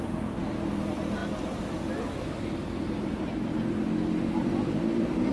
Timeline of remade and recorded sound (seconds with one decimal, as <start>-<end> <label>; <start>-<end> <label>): 0.0-4.4 recorded; 4.4-5.3 remade